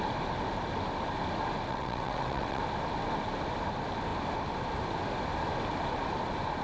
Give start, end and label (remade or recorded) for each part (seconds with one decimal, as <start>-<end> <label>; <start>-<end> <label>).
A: 0.0-1.7 recorded; 1.7-2.6 remade; 2.6-6.6 recorded